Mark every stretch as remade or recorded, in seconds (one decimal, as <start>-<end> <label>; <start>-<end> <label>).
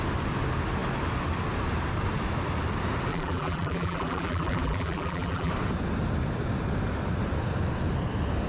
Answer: 0.0-3.1 recorded; 3.1-5.5 remade; 5.5-8.5 recorded